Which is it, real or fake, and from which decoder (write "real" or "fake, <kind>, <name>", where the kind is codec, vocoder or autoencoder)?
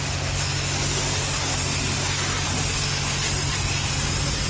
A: real